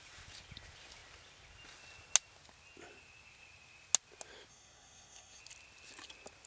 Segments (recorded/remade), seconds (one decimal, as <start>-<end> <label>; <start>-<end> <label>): 0.0-4.5 recorded; 4.5-5.4 remade; 5.4-6.5 recorded